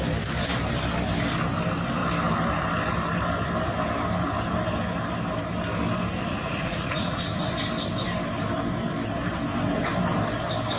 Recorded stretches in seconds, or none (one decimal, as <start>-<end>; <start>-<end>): 0.0-6.3; 7.5-10.8